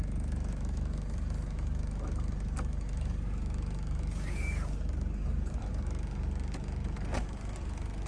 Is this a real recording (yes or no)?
no